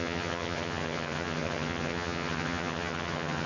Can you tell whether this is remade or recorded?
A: remade